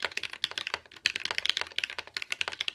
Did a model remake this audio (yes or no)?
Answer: no